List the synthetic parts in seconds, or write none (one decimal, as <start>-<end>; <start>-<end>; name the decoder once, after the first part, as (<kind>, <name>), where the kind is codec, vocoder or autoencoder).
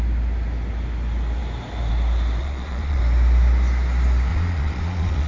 2.4-3.0 (vocoder, Vocos); 4.3-5.3